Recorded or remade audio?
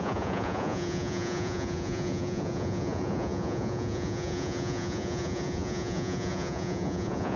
remade